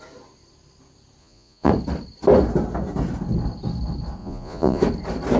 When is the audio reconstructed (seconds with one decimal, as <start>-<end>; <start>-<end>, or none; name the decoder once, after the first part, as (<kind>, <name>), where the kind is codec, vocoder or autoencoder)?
1.2-1.7 (vocoder, Vocos); 4.2-4.8